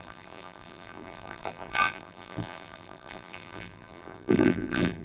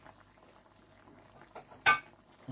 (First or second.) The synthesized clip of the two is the first